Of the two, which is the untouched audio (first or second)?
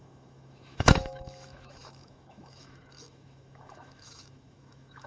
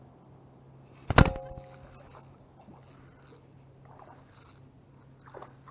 second